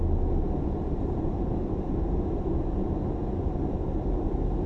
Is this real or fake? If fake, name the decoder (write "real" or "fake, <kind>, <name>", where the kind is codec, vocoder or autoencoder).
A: real